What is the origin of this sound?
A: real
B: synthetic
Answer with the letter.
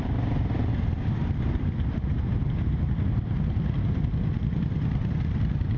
B